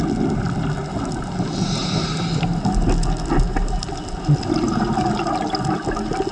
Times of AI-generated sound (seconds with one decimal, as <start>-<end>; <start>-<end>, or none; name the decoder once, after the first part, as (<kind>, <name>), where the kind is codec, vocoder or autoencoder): none